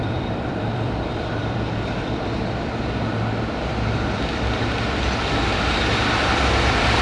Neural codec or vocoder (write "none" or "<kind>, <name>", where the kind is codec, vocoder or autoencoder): vocoder, BigVGAN v2